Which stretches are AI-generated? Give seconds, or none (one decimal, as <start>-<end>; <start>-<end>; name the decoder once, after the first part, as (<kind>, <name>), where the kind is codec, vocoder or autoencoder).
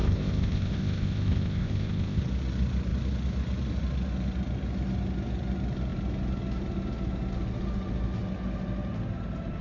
0.0-2.2 (codec, ZipCodec)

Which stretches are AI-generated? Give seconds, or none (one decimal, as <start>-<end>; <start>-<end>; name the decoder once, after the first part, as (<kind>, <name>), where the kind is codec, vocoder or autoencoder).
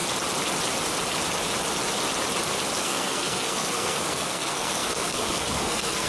2.8-6.1 (codec, SNAC)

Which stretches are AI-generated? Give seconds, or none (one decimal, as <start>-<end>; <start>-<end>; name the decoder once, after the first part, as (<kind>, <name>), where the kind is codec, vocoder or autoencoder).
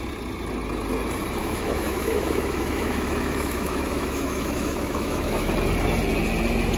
1.4-5.5 (autoencoder, DAC-VAE)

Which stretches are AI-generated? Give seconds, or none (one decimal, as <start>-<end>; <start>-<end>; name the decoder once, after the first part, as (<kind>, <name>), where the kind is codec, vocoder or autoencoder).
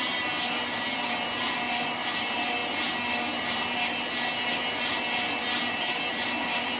none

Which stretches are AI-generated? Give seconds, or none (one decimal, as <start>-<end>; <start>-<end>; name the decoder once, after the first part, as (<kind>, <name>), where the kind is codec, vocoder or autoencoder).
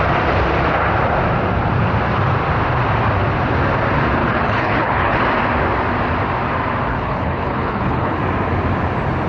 4.2-5.2 (codec, HILCodec); 6.9-8.2